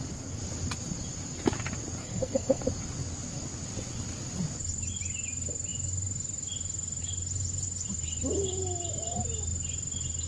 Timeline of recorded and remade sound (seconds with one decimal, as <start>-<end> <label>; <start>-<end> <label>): 0.0-2.0 recorded; 2.0-2.6 remade; 2.6-10.3 recorded